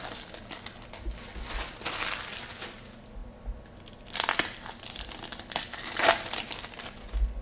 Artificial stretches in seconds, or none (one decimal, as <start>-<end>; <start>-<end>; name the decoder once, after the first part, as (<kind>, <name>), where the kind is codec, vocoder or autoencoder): none